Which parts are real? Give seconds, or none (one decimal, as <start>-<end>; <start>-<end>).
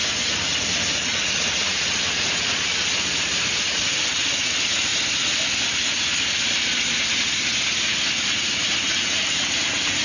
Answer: 4.9-8.3